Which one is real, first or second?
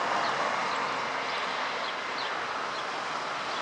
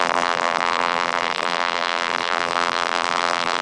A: first